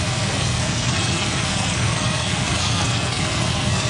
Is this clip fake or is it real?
fake